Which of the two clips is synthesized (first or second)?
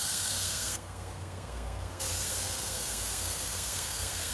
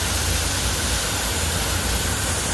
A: first